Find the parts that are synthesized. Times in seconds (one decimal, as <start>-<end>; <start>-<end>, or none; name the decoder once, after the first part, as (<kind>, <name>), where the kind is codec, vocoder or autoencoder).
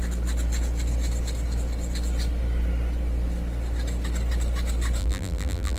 5.0-5.8 (vocoder, BigVGAN v2)